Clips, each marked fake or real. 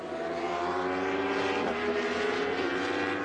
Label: fake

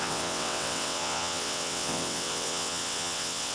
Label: fake